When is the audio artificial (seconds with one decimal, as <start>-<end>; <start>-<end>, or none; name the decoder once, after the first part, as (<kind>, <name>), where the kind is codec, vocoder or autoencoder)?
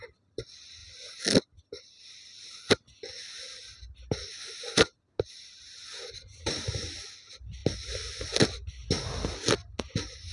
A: none